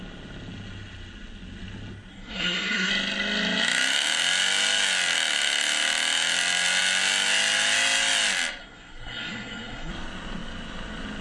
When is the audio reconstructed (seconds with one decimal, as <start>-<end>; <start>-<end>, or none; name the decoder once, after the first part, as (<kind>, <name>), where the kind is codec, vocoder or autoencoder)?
2.1-2.9 (codec, SNAC); 8.6-9.9

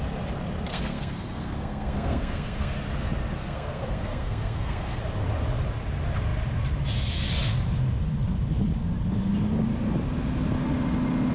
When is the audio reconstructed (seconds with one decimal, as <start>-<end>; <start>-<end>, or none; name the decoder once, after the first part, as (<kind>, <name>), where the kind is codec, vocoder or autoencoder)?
0.7-2.8 (codec, SNAC); 3.4-5.0

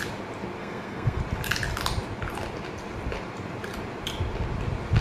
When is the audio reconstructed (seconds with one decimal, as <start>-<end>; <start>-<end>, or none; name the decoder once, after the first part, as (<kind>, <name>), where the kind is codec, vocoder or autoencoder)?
0.6-1.2 (codec, SNAC)